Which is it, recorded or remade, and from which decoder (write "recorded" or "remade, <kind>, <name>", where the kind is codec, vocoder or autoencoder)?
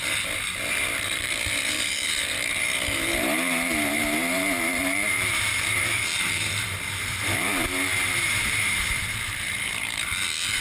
remade, vocoder, BigVGAN v2